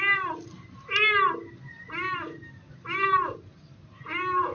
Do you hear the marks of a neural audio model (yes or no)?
no